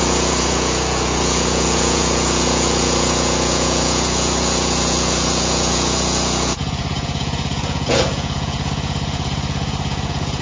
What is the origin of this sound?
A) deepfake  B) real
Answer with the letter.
A